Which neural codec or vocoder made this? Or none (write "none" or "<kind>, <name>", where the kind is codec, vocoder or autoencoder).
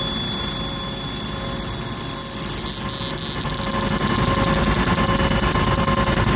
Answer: none